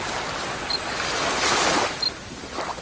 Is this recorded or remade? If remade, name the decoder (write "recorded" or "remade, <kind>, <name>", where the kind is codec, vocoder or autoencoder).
recorded